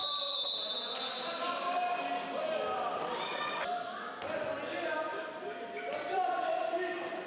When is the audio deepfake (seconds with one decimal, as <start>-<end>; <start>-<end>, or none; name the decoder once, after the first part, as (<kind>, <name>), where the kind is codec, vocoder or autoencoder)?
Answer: none